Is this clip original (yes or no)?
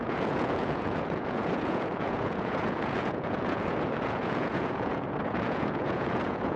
no